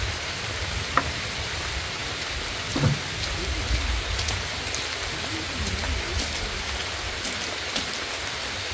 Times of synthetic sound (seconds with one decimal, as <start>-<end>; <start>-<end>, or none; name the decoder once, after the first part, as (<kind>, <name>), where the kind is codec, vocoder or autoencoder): none